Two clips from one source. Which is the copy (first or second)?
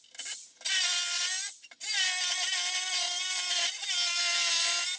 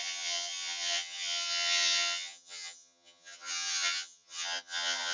second